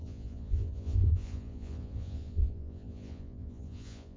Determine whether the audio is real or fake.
fake